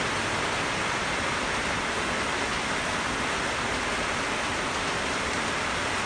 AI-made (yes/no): no